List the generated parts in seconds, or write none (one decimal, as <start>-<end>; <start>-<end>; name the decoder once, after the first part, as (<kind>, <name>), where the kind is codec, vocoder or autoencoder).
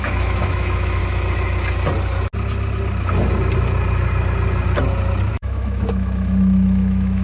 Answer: 0.0-1.0 (autoencoder, DAC-VAE); 5.3-7.2